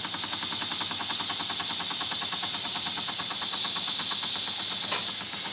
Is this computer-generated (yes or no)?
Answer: no